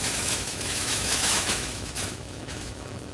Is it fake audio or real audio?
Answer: fake